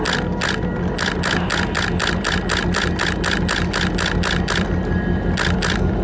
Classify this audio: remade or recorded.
recorded